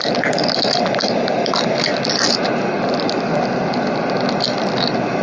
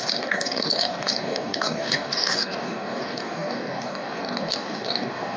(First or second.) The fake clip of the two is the second